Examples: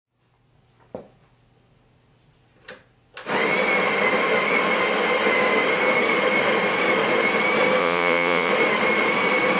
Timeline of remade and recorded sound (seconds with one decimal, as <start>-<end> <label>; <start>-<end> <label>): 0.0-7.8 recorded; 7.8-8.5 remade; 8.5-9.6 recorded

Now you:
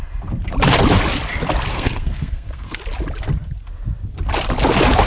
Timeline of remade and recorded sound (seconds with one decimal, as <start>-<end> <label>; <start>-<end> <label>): 0.0-1.7 recorded; 1.7-2.8 remade; 2.8-5.1 recorded

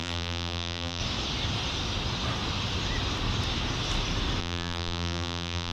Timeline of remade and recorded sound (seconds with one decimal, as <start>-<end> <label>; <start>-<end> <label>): 0.0-1.0 remade; 1.0-4.4 recorded; 4.4-5.7 remade

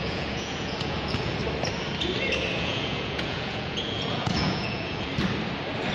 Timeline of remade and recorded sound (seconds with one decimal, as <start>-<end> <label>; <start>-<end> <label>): 0.0-1.4 remade; 1.4-2.6 recorded; 2.6-5.1 remade; 5.1-5.9 recorded

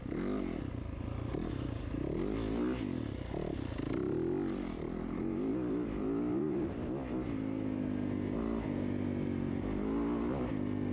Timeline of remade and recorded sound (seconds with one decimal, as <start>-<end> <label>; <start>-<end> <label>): 0.0-10.9 recorded